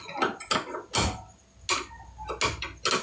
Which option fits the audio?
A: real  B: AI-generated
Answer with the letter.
A